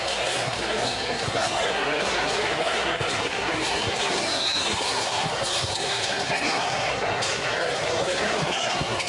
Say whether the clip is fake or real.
fake